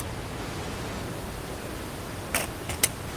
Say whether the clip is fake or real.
real